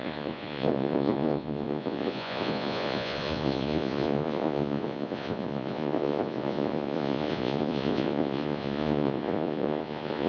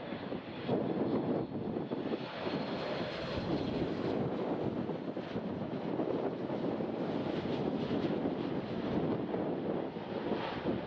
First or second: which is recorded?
second